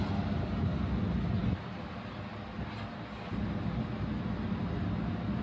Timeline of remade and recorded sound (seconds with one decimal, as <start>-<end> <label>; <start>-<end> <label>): 0.0-5.4 recorded